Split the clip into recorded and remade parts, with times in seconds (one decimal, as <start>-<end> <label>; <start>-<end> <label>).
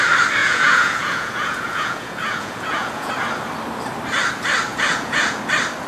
0.0-0.4 recorded; 0.4-3.1 remade; 3.1-4.7 recorded; 4.7-5.4 remade; 5.4-5.9 recorded